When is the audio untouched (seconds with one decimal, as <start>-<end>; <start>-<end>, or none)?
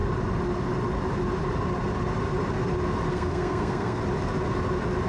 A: 0.0-3.1; 4.0-5.1